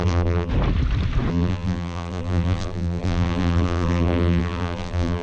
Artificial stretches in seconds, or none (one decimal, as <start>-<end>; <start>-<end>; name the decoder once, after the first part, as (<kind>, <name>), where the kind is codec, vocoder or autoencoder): 0.0-0.5 (vocoder, BigVGAN v2); 1.3-5.2